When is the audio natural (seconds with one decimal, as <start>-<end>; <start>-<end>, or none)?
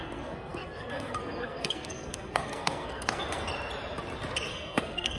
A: 3.5-4.5